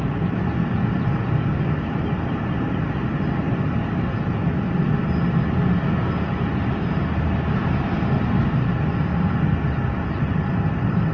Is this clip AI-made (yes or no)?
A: no